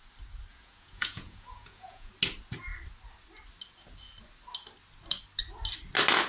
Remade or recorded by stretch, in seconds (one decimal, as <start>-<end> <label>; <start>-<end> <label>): 0.0-0.5 recorded; 0.5-2.1 remade; 2.1-6.3 recorded